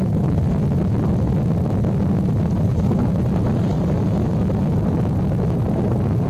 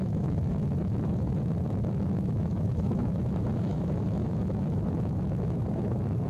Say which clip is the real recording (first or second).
first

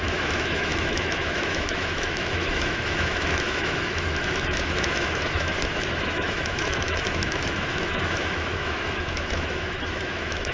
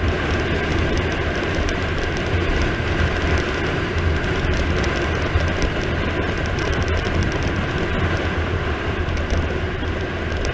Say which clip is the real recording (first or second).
second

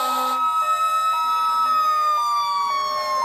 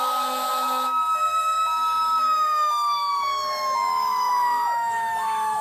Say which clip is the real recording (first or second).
first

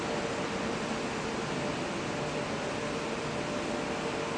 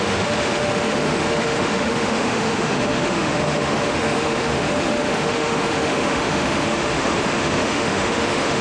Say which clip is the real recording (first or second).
first